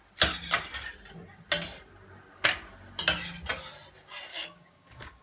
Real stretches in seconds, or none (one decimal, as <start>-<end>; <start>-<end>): 0.0-4.3